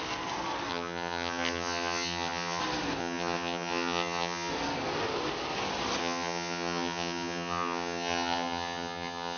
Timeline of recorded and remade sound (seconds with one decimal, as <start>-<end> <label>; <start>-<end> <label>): 0.0-0.7 recorded; 0.7-2.6 remade; 2.6-3.0 recorded; 3.0-4.5 remade; 4.5-6.0 recorded; 6.0-9.4 remade